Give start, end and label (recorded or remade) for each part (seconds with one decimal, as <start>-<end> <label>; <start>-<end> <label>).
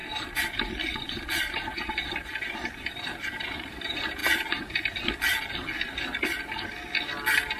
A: 0.0-4.2 remade; 4.2-7.6 recorded